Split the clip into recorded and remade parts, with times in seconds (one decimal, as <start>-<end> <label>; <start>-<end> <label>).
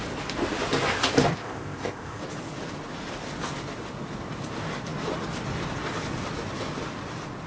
0.0-1.3 recorded; 1.3-2.2 remade; 2.2-7.5 recorded